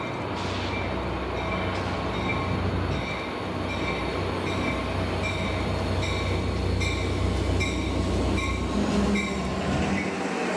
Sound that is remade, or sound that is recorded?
recorded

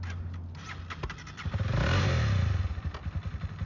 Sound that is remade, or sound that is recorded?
recorded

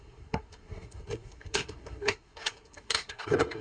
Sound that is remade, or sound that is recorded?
remade